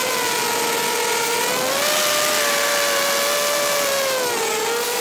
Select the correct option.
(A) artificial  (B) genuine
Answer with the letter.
B